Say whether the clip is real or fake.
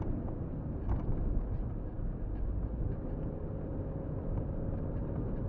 real